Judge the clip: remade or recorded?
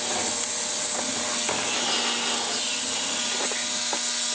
recorded